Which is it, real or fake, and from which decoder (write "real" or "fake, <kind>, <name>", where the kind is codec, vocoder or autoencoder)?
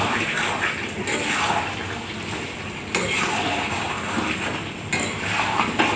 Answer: real